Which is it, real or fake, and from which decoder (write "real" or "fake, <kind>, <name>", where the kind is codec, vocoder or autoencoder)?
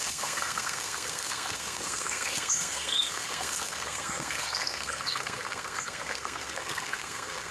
fake, codec, SNAC